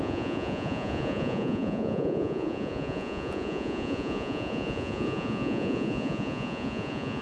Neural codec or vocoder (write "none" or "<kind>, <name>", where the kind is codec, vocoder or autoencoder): vocoder, Vocos